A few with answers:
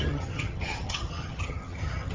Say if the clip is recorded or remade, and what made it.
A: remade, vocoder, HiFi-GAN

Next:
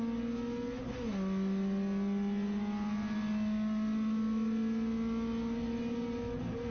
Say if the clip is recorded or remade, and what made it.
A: recorded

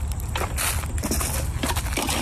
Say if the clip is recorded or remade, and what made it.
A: recorded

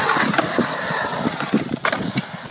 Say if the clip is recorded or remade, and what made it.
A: recorded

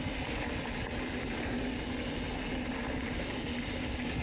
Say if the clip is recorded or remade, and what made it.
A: recorded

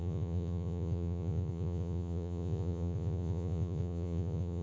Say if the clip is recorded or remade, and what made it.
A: remade, vocoder, Vocos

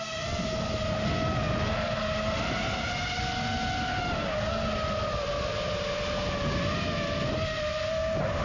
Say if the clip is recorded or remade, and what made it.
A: recorded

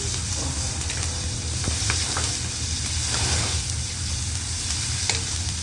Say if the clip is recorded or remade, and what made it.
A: remade, vocoder, BigVGAN v2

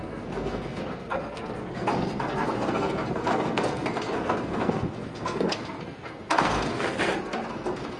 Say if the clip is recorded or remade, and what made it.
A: remade, codec, SNAC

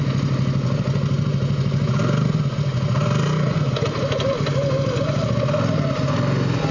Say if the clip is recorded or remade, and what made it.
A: recorded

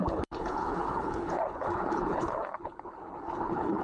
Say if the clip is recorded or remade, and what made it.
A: remade, codec, HILCodec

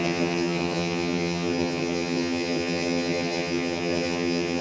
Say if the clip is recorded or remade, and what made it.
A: remade, vocoder, HiFi-GAN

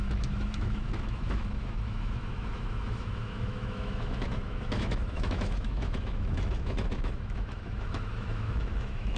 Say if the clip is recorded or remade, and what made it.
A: remade, autoencoder, DAC-VAE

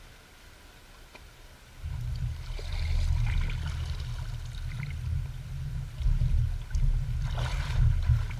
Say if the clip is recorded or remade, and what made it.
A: recorded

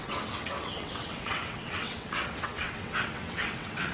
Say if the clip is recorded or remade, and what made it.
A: remade, vocoder, WaveNeXt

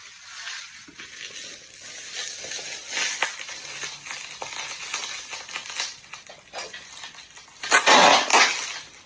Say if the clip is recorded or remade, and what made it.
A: recorded